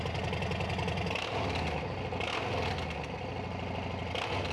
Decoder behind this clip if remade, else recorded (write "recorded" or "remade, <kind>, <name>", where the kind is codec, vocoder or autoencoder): recorded